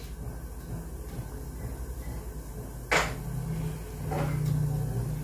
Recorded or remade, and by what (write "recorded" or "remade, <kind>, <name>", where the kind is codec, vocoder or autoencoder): recorded